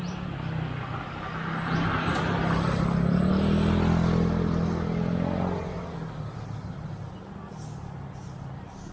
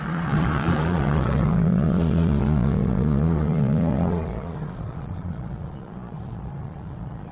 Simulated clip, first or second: second